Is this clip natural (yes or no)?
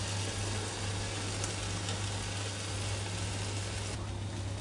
yes